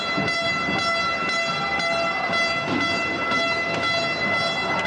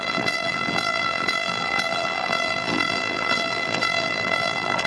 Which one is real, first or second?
first